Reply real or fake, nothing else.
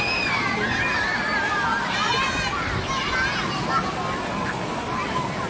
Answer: real